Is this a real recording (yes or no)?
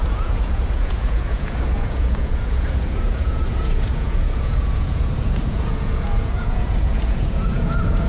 no